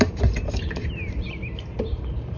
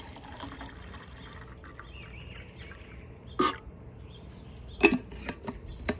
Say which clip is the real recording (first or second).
second